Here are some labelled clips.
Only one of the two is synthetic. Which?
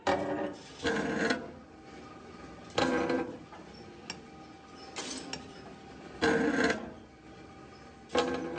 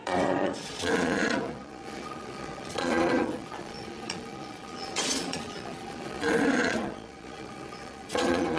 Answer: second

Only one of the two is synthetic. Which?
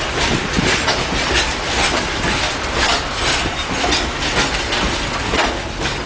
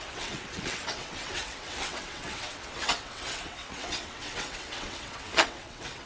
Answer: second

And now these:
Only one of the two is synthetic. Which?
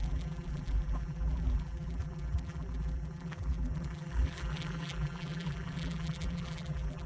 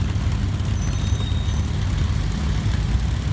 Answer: first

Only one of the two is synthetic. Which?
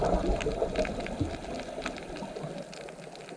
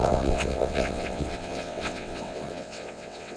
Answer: second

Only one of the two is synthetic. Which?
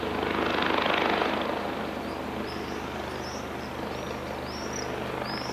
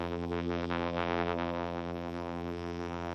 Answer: second